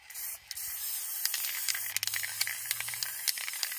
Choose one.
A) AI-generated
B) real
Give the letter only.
B